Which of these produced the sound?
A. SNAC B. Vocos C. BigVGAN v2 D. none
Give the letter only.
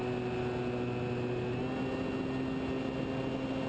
D